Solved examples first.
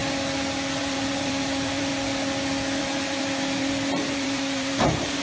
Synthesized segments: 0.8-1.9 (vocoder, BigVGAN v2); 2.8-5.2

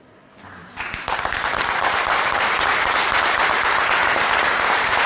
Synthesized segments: 0.6-3.7 (vocoder, BigVGAN v2)

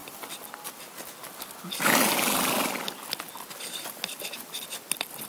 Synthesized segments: none

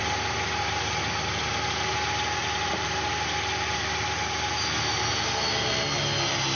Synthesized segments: 2.4-4.1 (vocoder, BigVGAN v2)

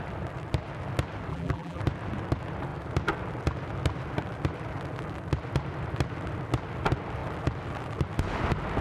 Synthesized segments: 1.3-1.8 (vocoder, BigVGAN v2)

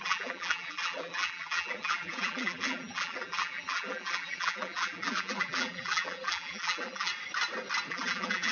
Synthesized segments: 0.0-7.1 (vocoder, BigVGAN v2); 7.9-8.5

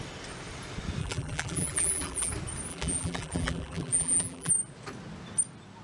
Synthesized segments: 1.0-2.3 (vocoder, BigVGAN v2); 2.7-4.5